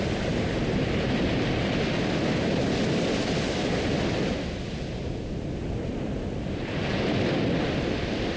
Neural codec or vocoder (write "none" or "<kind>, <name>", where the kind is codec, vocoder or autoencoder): none